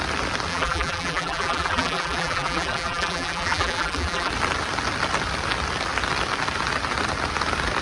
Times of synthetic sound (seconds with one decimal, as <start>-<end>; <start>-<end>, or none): 0.5-4.3